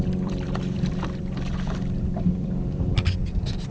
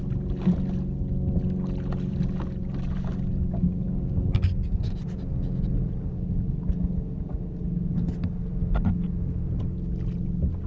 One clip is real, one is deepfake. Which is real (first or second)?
second